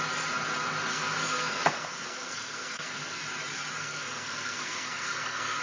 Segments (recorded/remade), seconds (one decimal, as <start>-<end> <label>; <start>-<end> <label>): 0.0-0.9 recorded; 0.9-3.2 remade; 3.2-3.8 recorded; 3.8-5.6 remade